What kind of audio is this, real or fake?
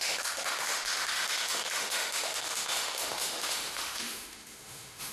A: fake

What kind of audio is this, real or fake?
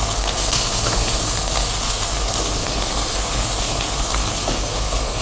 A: fake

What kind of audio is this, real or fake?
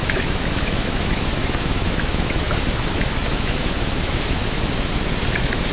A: fake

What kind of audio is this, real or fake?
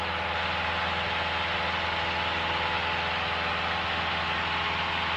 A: real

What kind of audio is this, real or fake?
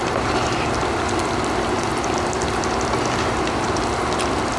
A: real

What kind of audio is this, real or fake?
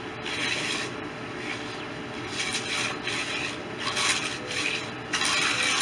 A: real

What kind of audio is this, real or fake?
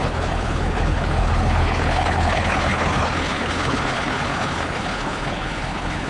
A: fake